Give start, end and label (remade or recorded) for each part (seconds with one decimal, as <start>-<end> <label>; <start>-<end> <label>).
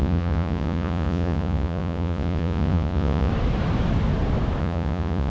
0.0-3.3 remade; 3.3-4.6 recorded; 4.6-5.3 remade